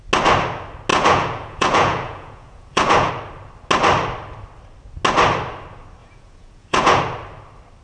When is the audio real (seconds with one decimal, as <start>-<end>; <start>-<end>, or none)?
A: 0.0-0.9; 3.1-6.0; 7.0-7.8

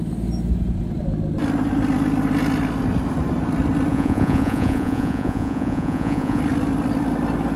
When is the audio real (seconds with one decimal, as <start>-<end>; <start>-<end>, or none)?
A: 0.0-3.9; 6.4-7.6

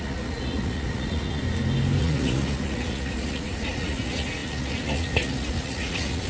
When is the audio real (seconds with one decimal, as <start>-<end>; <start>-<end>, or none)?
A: 1.4-2.0

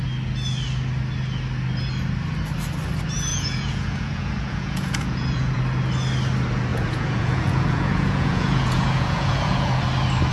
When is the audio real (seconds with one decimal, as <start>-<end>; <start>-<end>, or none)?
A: 0.0-3.3; 5.6-6.7; 9.7-10.3

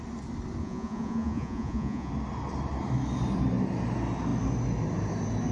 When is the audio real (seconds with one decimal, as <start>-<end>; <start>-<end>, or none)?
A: 0.0-0.6; 2.1-5.5

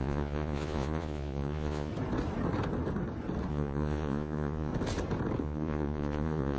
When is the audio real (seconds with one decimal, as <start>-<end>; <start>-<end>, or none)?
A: 1.9-3.5; 4.7-5.4